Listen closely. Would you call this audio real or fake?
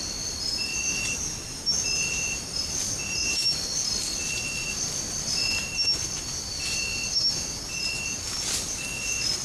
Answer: real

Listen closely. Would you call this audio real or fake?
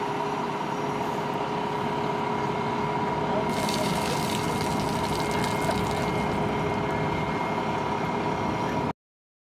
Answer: real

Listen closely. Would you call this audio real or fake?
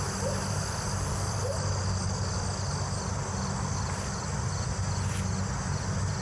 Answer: real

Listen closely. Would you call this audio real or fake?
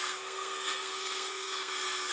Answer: fake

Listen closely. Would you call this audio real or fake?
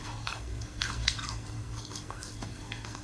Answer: fake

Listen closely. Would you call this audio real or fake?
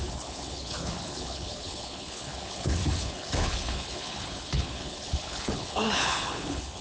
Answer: fake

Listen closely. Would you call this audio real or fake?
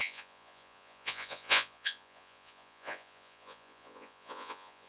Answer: fake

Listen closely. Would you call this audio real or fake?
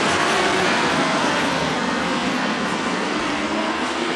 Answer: fake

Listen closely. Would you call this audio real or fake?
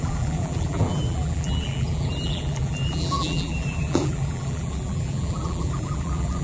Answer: fake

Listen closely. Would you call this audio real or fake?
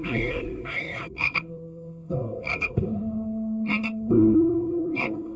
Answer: fake